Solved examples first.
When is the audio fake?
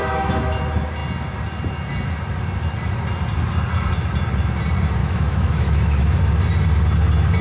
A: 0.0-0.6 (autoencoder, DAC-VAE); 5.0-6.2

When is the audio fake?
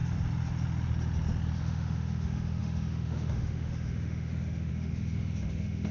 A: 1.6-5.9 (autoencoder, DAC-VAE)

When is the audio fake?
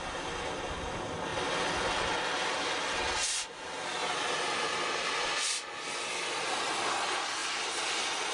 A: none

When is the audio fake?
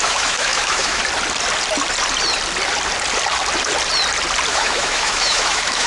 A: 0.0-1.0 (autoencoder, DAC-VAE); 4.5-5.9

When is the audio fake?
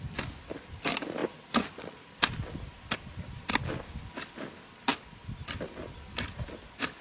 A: none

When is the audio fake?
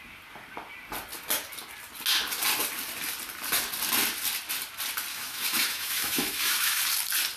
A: 5.1-6.8 (autoencoder, DAC-VAE)